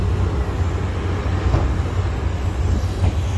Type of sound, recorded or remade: recorded